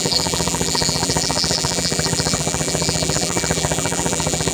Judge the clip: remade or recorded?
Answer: remade